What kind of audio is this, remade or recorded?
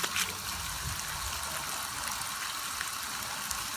recorded